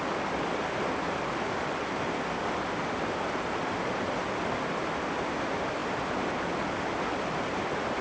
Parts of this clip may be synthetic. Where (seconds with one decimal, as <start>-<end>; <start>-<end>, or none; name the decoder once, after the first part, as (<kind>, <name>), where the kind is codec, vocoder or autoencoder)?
none